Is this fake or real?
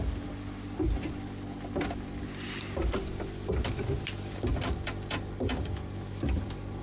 real